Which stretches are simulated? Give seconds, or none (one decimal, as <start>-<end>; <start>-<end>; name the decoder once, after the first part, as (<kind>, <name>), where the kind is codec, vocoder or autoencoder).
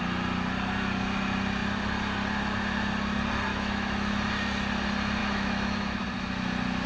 3.5-4.2 (autoencoder, DAC-VAE); 5.2-6.0